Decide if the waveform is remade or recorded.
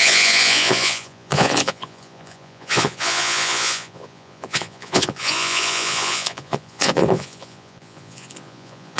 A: remade